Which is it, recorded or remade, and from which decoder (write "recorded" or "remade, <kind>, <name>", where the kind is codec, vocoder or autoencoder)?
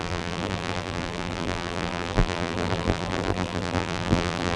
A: remade, vocoder, BigVGAN v2